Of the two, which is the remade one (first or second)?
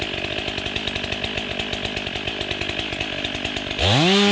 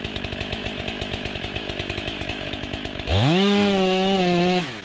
second